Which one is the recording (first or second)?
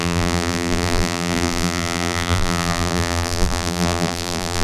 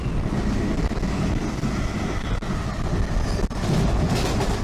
second